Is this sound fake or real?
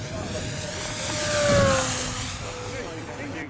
real